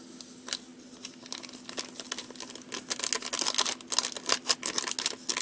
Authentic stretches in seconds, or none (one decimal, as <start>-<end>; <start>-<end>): 0.0-5.4